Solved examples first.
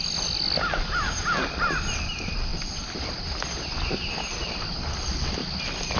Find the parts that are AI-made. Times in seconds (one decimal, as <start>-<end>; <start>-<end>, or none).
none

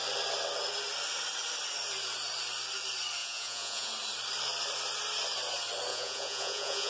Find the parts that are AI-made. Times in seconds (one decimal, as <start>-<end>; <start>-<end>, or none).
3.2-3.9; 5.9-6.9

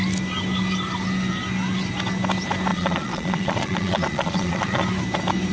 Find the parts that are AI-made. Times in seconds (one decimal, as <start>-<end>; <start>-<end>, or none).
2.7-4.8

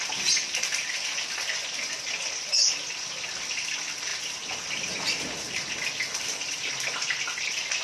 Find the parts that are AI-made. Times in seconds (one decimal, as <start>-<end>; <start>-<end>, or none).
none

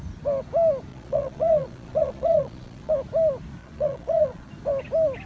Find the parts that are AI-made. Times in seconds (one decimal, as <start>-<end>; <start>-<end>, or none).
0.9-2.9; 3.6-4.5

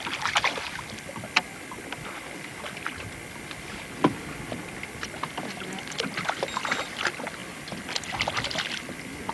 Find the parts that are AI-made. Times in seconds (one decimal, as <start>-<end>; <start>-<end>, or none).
none

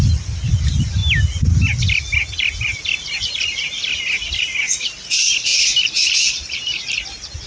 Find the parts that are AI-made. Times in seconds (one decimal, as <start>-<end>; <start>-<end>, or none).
none

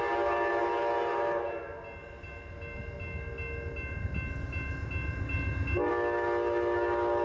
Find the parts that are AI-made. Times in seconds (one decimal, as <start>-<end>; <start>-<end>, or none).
none